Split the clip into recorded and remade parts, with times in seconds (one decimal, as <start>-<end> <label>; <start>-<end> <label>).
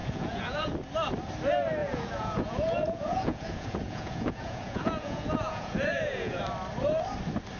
0.0-0.7 remade; 0.7-1.8 recorded; 1.8-6.4 remade; 6.4-7.6 recorded